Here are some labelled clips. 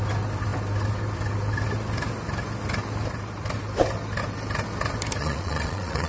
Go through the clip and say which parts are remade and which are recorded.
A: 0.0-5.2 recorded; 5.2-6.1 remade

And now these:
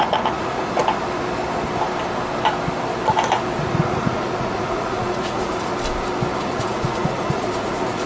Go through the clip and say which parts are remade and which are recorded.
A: 0.0-0.8 remade; 0.8-3.6 recorded; 3.6-5.7 remade; 5.7-6.4 recorded; 6.4-8.1 remade

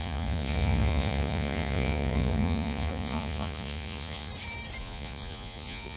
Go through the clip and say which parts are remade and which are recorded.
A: 0.0-4.3 remade; 4.3-4.8 recorded; 4.8-6.0 remade

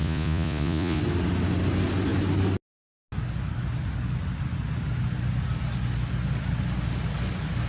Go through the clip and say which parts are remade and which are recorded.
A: 0.0-1.0 remade; 1.0-7.7 recorded